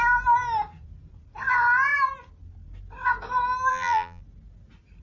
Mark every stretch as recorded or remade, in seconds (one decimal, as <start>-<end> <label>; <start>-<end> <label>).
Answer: 0.0-3.7 recorded; 3.7-4.2 remade; 4.2-5.0 recorded